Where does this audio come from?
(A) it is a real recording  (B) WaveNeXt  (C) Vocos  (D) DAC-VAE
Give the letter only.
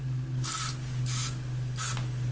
A